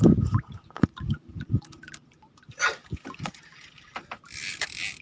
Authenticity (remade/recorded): recorded